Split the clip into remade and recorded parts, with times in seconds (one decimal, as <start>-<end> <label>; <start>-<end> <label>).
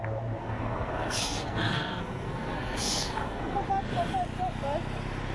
0.0-0.4 recorded; 0.4-3.6 remade; 3.6-5.3 recorded